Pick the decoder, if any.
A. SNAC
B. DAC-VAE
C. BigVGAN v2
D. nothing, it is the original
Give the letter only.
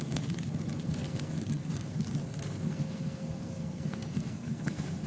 A